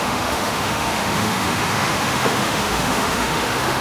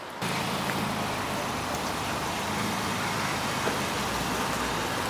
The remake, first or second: first